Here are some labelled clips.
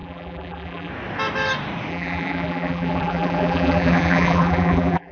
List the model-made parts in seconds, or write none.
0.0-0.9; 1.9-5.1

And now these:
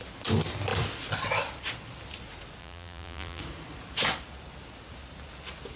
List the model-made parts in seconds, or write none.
2.6-3.4

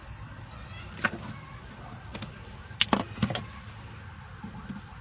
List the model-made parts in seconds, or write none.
none

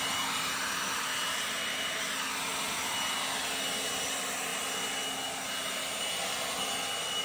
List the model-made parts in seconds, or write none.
none

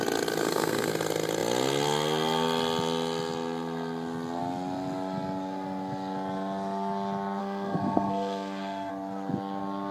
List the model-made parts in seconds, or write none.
0.4-0.9; 7.4-8.9

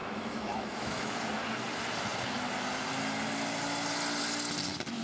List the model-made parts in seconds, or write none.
0.0-1.1

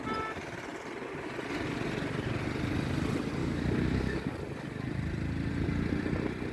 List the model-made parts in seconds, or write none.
3.4-4.4

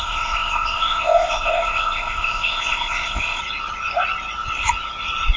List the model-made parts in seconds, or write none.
0.0-3.4